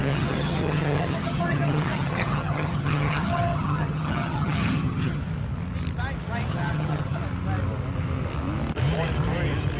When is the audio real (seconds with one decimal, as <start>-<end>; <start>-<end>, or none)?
5.2-6.5; 7.2-9.8